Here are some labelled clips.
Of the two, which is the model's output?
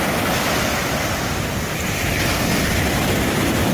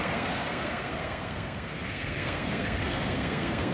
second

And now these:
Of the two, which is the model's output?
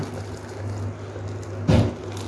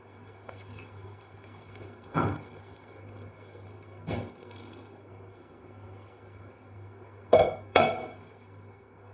second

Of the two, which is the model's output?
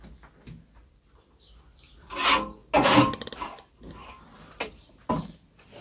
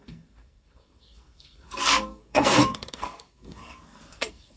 second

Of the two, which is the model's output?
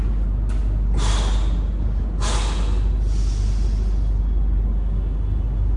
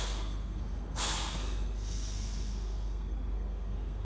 second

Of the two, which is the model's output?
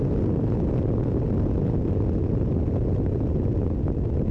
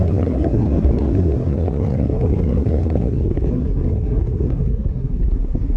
second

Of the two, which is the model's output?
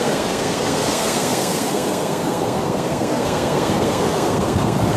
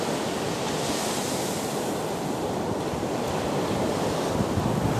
first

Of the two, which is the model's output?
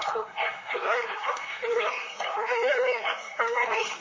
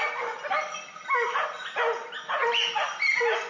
first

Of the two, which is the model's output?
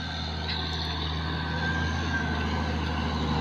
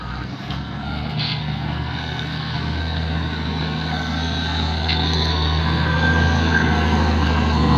second